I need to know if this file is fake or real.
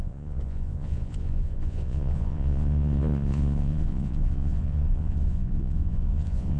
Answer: fake